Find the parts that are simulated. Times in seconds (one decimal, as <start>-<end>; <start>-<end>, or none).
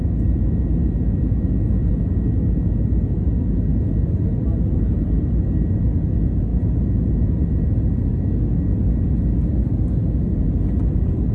none